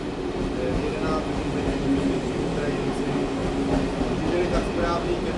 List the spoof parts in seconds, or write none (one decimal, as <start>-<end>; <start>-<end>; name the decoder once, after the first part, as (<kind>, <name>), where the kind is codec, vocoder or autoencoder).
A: none